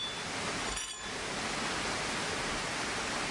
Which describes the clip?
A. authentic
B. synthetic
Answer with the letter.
A